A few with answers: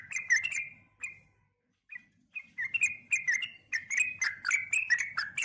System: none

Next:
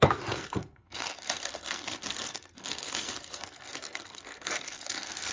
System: codec, SNAC